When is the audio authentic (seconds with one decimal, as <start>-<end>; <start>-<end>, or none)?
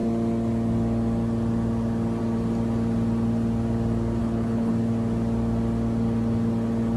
0.0-4.2; 4.7-7.0